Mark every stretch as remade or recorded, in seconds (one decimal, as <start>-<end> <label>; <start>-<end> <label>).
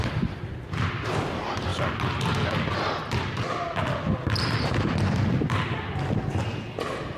0.0-7.2 recorded